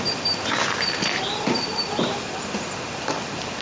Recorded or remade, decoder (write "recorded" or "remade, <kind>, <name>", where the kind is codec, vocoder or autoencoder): recorded